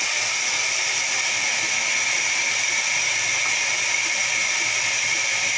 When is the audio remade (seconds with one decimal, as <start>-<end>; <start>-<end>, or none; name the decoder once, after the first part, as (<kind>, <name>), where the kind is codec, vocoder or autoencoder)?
0.0-1.4 (vocoder, BigVGAN v2); 2.2-5.6